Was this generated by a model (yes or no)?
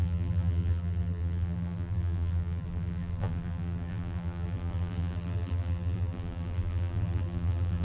yes